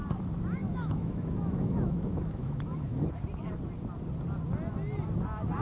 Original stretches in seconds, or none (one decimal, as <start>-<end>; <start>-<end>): 0.0-0.6; 3.1-5.6